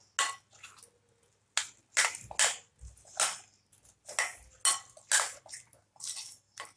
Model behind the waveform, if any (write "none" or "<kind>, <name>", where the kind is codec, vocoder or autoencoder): none